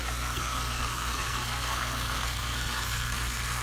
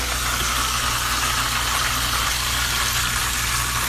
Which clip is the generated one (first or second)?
first